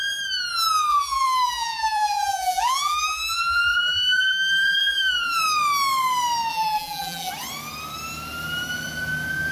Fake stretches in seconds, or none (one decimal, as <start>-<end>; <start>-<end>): 0.9-5.4; 6.5-7.3